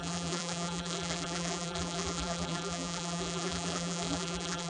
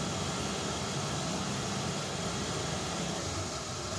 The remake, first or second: first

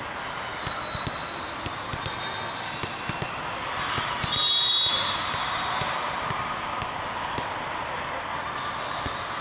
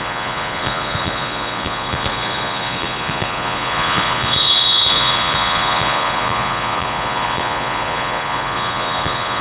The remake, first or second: second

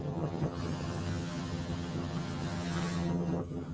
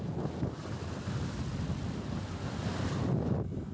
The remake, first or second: first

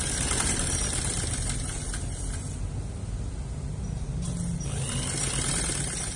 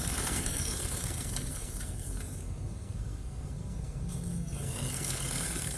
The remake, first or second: second